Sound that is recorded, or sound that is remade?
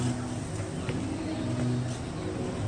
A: recorded